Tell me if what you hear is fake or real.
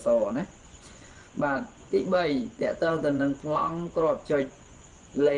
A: fake